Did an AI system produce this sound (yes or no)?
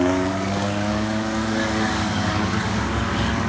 yes